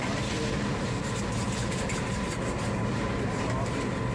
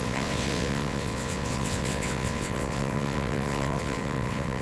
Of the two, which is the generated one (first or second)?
second